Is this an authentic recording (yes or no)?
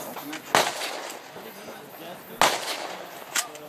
yes